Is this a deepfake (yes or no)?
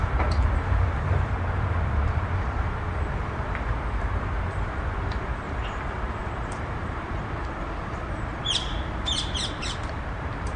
yes